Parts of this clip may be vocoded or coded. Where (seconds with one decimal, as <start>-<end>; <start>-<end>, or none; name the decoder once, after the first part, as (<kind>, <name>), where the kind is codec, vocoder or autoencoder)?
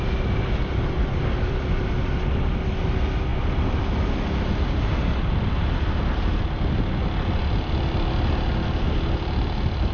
none